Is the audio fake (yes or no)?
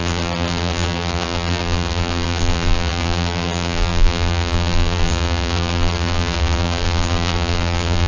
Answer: yes